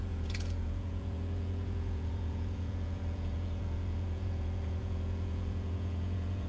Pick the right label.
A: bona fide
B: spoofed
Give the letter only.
B